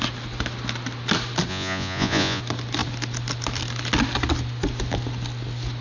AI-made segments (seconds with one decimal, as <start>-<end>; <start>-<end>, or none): 1.5-2.4